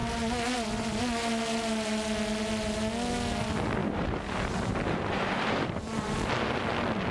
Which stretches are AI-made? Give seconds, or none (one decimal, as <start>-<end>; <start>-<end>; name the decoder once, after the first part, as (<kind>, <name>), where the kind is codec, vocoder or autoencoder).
3.8-6.3 (vocoder, BigVGAN v2)